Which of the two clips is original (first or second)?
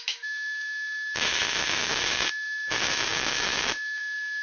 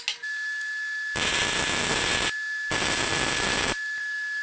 second